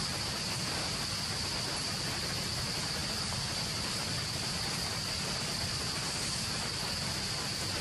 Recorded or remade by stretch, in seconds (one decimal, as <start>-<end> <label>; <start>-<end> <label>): 0.0-7.8 recorded